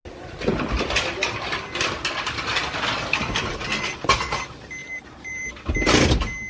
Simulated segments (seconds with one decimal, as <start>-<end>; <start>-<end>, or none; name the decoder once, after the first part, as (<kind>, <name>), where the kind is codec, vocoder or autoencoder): 4.8-5.5 (vocoder, BigVGAN v2)